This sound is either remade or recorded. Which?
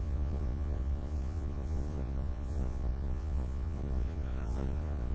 remade